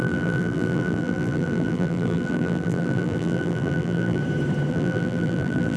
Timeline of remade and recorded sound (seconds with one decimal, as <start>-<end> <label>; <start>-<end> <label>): 0.0-4.2 remade; 4.2-4.7 recorded; 4.7-5.8 remade